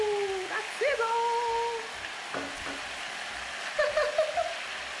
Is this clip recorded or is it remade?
recorded